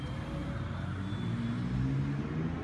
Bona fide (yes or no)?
yes